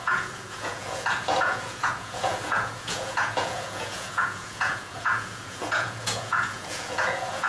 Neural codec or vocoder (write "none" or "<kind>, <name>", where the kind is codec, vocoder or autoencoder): vocoder, Vocos